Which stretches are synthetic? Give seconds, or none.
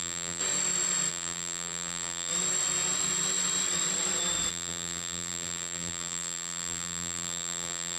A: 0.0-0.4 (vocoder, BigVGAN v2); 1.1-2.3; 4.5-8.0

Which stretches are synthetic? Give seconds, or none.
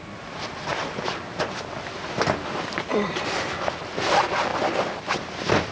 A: none